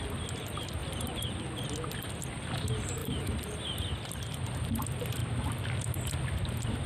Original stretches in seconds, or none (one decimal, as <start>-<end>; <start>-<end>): 0.0-3.0; 3.7-6.9